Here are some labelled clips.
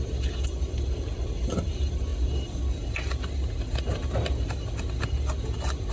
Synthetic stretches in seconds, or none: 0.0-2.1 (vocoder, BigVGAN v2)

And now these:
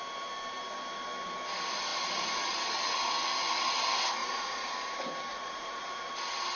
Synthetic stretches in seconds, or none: 4.2-4.7 (vocoder, Vocos); 5.3-6.1

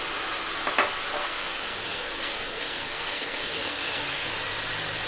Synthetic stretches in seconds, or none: 1.2-4.3 (codec, SNAC)

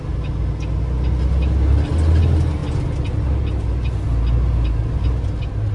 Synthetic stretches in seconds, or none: none

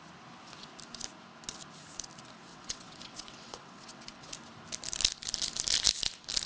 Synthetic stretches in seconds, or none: 2.5-4.3 (vocoder, WaveNeXt)

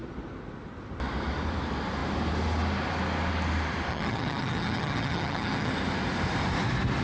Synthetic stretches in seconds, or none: 3.9-5.7 (vocoder, HiFi-GAN)

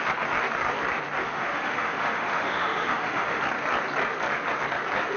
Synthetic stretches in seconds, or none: 1.2-3.4 (autoencoder, DAC-VAE)